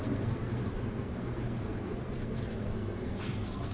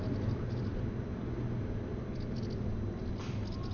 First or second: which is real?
second